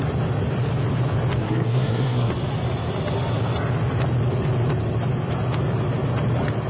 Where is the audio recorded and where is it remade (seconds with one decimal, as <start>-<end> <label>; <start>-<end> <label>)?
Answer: 0.0-1.4 recorded; 1.4-2.3 remade; 2.3-6.7 recorded